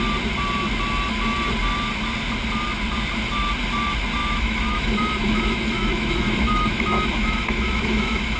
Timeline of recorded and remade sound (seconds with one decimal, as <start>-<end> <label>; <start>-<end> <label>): 0.0-4.2 recorded; 4.2-8.4 remade